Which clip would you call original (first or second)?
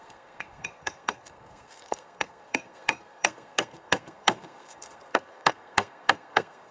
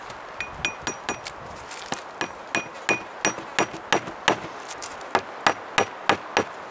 second